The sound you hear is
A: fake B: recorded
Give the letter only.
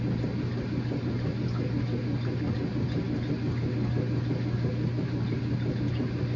B